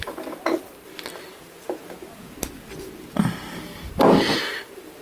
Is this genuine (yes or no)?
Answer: yes